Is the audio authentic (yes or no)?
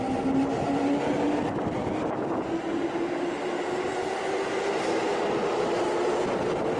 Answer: yes